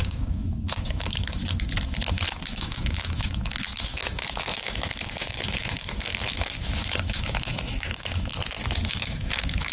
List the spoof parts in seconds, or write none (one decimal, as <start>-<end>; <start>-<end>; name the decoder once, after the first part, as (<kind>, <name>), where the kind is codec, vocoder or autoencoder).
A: 0.0-1.4 (autoencoder, DAC-VAE); 2.5-8.3; 8.9-9.7